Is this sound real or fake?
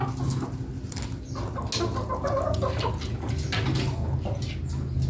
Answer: real